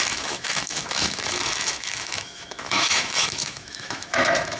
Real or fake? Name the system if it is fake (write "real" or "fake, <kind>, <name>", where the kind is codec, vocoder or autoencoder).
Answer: fake, autoencoder, DAC-VAE